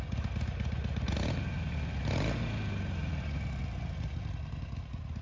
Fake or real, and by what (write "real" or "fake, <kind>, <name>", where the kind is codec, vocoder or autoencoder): real